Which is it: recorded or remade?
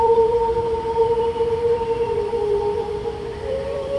remade